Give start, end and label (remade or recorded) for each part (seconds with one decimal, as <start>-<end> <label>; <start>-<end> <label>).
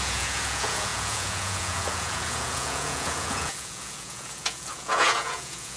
0.0-5.8 remade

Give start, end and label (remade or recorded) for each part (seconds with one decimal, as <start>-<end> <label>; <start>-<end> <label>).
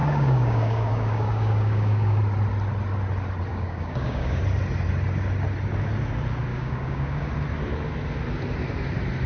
0.0-2.2 remade; 2.2-3.5 recorded; 3.5-4.4 remade; 4.4-6.5 recorded; 6.5-7.3 remade; 7.3-9.3 recorded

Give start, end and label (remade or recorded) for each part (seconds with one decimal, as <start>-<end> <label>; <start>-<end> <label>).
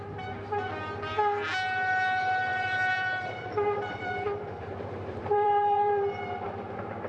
0.0-2.5 recorded; 2.5-5.9 remade; 5.9-7.1 recorded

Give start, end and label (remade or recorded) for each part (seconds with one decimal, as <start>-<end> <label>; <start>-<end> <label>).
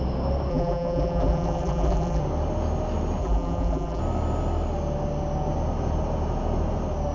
0.0-0.5 recorded; 0.5-2.2 remade; 2.2-3.2 recorded; 3.2-4.0 remade; 4.0-7.1 recorded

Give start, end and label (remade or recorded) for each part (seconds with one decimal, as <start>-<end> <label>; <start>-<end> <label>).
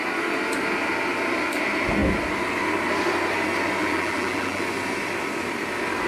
0.0-3.8 recorded; 3.8-4.6 remade; 4.6-6.1 recorded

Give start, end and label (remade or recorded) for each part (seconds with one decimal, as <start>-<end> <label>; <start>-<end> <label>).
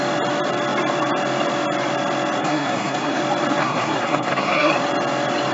0.0-2.4 recorded; 2.4-3.2 remade; 3.2-3.6 recorded; 3.6-4.7 remade; 4.7-5.5 recorded